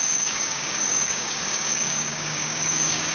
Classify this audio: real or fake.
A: fake